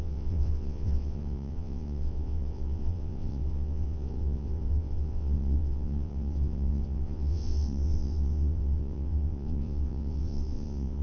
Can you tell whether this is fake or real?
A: fake